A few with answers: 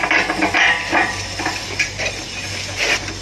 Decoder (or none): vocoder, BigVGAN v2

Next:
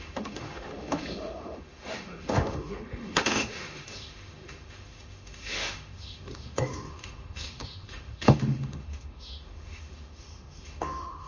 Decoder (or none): autoencoder, DAC-VAE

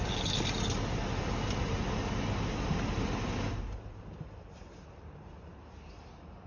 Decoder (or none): none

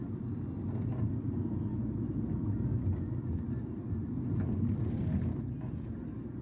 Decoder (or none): none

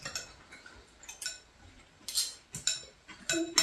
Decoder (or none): none